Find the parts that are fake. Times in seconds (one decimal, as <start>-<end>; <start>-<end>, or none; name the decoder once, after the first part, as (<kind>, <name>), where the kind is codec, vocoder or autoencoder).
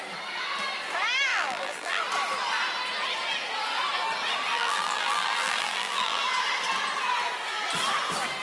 1.3-2.0 (vocoder, BigVGAN v2); 4.5-6.2